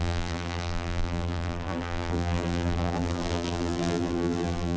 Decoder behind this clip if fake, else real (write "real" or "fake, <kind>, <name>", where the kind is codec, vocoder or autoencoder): fake, vocoder, BigVGAN v2